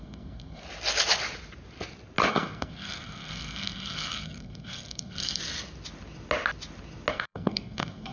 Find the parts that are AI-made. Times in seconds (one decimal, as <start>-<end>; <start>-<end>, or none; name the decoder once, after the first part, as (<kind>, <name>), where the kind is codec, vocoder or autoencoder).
0.0-0.6 (codec, SNAC); 2.3-5.4; 7.1-8.1